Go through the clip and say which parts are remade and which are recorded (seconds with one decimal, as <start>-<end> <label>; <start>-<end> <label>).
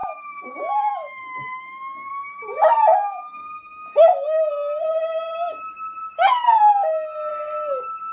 0.0-2.1 remade; 2.1-2.9 recorded; 2.9-4.5 remade; 4.5-8.1 recorded